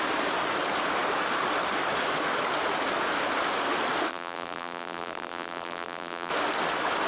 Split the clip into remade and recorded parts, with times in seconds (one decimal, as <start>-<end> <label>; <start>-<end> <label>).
0.0-4.1 recorded; 4.1-6.3 remade; 6.3-7.1 recorded